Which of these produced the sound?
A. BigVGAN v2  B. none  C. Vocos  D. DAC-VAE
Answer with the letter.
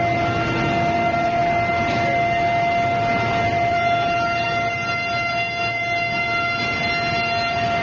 B